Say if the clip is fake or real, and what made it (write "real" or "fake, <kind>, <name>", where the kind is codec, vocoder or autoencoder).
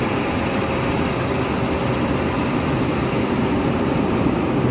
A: real